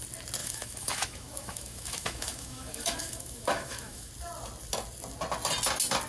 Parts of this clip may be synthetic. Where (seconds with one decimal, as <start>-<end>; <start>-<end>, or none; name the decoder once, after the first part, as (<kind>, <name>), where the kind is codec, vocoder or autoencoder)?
0.4-4.1 (autoencoder, DAC-VAE)